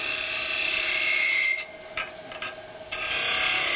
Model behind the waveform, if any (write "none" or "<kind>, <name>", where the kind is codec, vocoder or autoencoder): none